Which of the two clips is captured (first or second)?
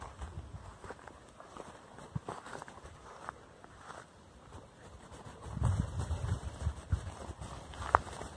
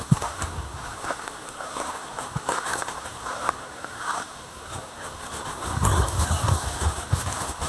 first